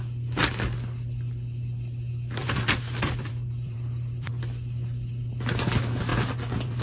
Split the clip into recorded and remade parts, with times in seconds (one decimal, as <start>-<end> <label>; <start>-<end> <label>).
0.0-2.4 recorded; 2.4-4.3 remade; 4.3-6.1 recorded; 6.1-6.8 remade